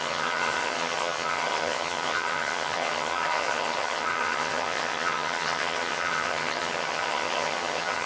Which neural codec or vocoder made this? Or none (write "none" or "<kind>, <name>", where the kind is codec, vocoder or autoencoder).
vocoder, HiFi-GAN